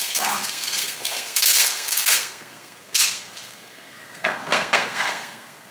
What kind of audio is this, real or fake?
fake